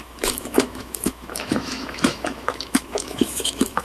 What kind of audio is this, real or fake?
fake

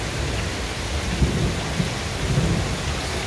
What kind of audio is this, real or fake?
real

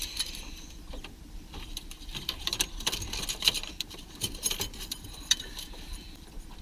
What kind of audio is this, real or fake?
fake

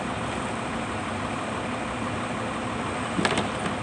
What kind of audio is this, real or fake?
real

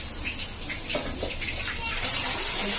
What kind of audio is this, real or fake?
real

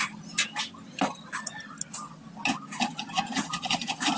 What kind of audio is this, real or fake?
real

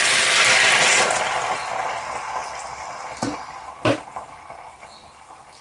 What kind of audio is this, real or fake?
real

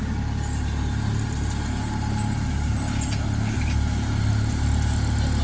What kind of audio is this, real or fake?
real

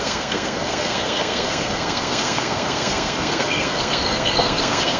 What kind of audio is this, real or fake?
fake